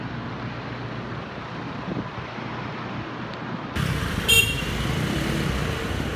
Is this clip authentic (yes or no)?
yes